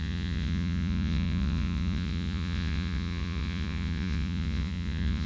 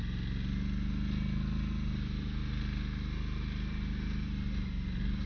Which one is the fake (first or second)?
first